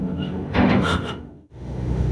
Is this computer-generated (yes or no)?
yes